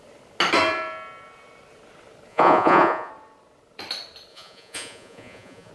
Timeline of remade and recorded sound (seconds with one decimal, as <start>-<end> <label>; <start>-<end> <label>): 0.0-2.3 recorded; 2.3-3.1 remade; 3.1-4.3 recorded; 4.3-5.7 remade